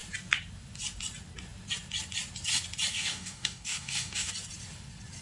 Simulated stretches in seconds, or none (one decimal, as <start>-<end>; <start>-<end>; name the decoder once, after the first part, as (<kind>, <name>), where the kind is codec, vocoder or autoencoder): 2.9-4.3 (codec, DAC)